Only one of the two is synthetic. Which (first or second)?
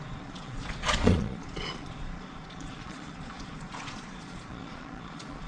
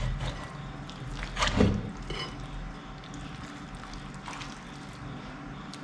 first